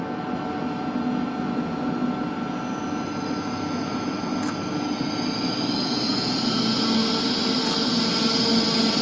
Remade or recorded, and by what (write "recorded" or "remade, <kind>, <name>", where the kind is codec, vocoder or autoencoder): recorded